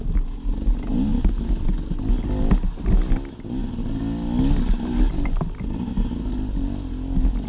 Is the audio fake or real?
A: real